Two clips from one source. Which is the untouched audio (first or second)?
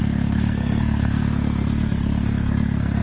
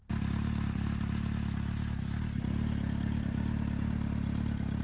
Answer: second